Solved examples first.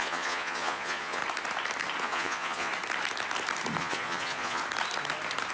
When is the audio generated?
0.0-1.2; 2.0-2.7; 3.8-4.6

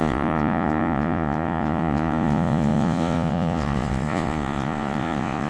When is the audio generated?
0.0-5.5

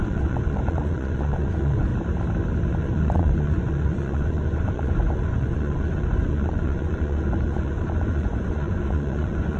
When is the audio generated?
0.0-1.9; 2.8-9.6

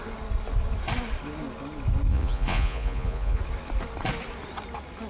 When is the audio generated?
2.1-3.4